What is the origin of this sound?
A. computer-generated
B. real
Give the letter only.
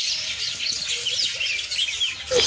B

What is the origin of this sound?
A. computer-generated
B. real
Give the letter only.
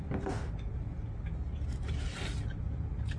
B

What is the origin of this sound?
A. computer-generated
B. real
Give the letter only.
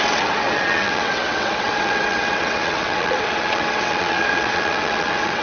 A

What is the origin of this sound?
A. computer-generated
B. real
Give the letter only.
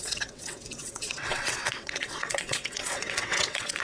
A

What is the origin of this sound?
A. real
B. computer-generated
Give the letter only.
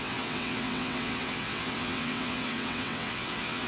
B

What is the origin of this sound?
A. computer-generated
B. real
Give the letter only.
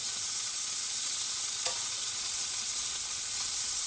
A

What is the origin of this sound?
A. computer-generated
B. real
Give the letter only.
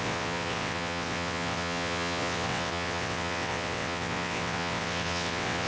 A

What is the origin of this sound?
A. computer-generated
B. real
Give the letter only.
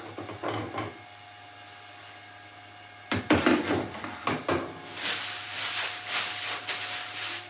B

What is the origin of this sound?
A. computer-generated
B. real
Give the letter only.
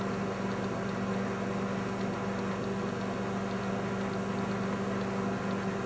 B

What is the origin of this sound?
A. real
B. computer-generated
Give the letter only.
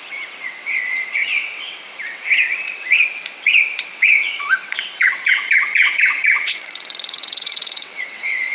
B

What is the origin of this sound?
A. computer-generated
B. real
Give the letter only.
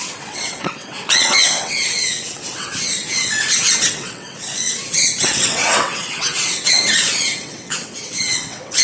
A